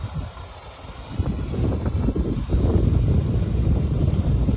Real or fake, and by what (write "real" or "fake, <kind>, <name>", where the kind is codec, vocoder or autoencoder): real